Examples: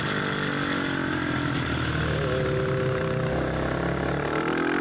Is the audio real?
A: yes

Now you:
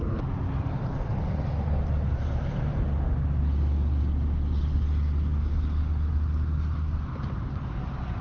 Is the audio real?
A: yes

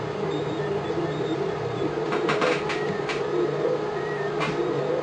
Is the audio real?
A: no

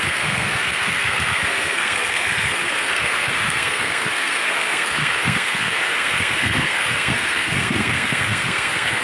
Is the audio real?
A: no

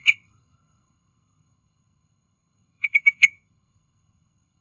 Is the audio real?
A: no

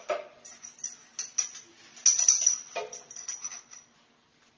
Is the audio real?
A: yes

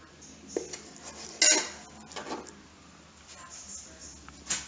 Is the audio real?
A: yes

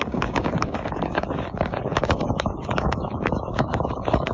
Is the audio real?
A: no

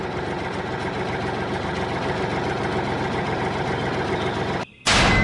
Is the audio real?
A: yes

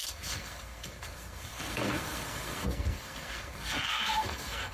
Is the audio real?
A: no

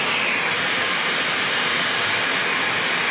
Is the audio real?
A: yes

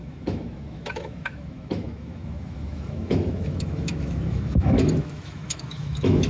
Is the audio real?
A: no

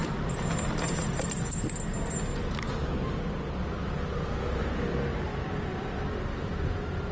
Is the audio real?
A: yes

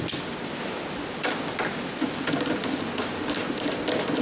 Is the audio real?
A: yes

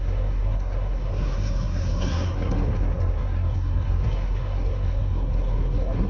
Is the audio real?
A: no